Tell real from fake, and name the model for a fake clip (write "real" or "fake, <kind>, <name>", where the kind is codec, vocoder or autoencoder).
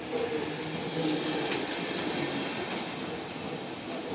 real